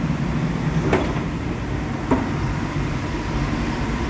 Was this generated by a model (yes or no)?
yes